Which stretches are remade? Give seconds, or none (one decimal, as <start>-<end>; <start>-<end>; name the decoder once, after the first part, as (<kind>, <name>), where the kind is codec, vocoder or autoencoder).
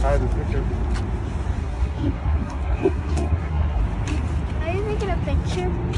1.6-3.8 (codec, SNAC)